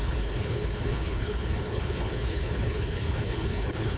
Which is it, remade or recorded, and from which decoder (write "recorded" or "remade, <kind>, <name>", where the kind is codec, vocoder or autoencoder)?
remade, codec, HILCodec